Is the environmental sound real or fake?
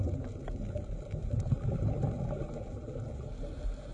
real